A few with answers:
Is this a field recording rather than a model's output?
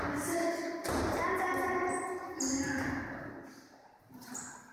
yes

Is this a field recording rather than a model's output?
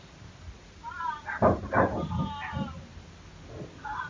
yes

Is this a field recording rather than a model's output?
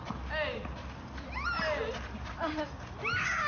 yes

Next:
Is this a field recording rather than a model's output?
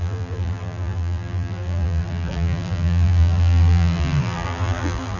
no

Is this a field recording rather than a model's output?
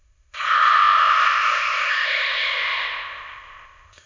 no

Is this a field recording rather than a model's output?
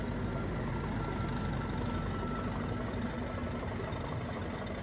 yes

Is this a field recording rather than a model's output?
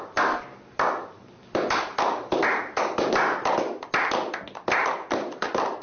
yes